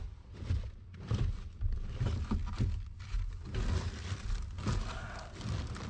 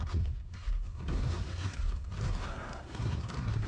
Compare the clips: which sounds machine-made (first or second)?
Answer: second